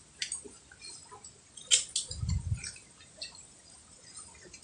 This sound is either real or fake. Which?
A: real